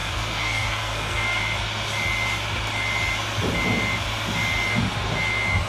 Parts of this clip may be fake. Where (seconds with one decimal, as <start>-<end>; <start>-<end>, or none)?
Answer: 0.0-1.4